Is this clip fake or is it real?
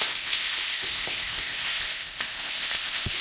fake